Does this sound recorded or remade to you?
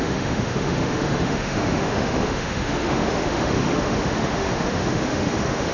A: remade